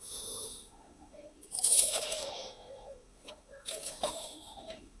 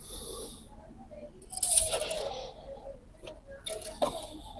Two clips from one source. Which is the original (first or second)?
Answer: second